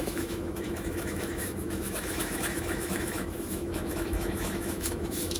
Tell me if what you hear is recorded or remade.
remade